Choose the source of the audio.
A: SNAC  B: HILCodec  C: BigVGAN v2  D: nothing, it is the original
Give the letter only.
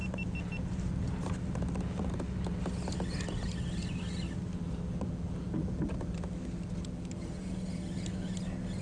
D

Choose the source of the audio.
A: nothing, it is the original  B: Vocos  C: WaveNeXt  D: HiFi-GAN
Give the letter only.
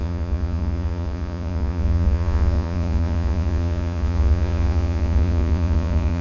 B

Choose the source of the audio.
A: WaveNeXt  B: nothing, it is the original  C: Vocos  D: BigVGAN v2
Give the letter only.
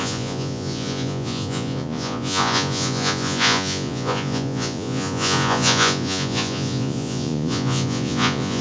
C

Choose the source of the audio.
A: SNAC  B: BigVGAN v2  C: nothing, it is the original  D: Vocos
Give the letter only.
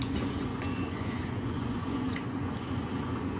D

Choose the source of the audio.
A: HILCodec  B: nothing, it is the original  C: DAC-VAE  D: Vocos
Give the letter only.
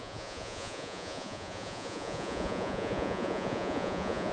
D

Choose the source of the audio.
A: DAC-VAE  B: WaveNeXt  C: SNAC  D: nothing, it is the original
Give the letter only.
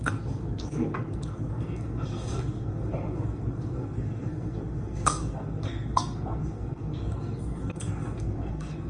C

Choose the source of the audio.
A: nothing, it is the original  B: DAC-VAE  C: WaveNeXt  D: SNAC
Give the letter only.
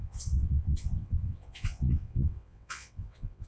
C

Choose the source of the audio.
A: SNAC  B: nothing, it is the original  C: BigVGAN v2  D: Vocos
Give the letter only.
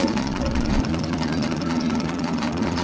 D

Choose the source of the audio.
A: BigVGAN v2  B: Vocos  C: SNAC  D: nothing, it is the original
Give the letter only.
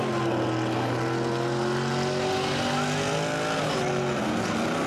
D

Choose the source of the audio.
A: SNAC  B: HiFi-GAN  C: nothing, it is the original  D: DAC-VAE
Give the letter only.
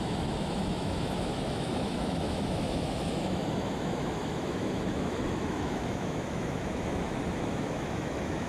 D